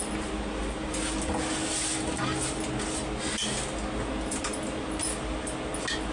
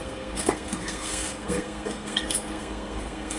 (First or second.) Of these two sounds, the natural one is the first